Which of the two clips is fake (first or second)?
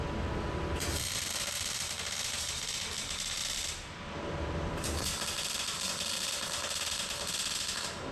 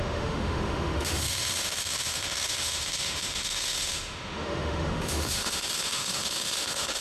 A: second